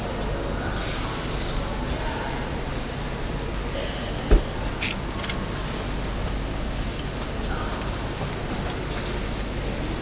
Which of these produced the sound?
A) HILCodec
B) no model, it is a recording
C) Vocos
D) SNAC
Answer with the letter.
B